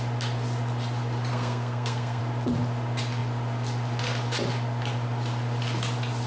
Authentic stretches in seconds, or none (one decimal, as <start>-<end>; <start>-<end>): 0.0-1.3; 2.2-6.3